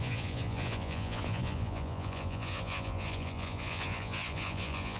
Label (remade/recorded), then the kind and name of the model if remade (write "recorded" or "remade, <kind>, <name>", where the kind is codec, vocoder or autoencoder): remade, vocoder, Vocos